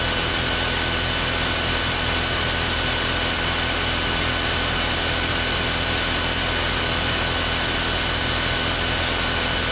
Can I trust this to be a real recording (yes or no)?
yes